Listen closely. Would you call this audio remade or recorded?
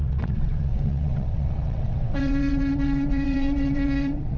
remade